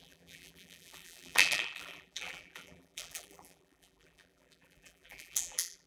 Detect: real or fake fake